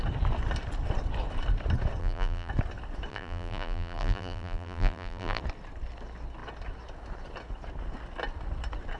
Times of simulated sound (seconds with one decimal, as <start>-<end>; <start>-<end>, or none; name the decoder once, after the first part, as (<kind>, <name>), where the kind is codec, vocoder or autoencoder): 2.0-2.5 (vocoder, BigVGAN v2); 3.1-5.4